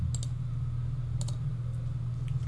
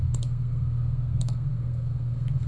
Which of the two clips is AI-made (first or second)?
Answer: second